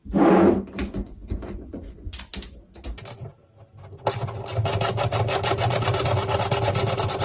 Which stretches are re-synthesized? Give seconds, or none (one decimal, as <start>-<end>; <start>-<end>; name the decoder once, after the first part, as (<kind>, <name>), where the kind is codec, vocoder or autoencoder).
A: 0.8-2.3 (vocoder, Vocos)